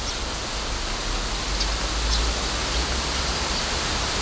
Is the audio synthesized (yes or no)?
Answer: no